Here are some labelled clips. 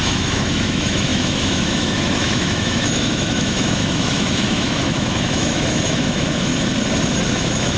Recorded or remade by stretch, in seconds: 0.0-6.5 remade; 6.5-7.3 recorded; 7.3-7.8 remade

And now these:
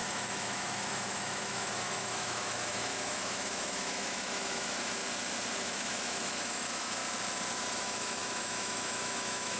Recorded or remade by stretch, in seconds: 0.0-5.0 remade; 5.0-5.6 recorded; 5.6-7.0 remade; 7.0-7.6 recorded; 7.6-9.6 remade

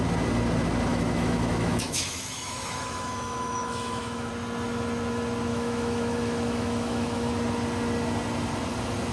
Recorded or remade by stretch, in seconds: 0.0-0.9 recorded; 0.9-4.3 remade; 4.3-5.5 recorded; 5.5-7.3 remade; 7.3-9.1 recorded

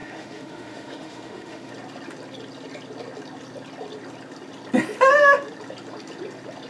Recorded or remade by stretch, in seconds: 0.0-1.7 remade; 1.7-6.7 recorded

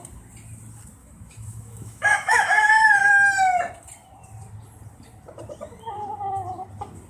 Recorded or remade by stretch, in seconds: 0.0-1.0 recorded; 1.0-3.1 remade; 3.1-7.1 recorded